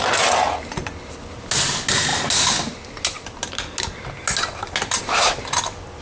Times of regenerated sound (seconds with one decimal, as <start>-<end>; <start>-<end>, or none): none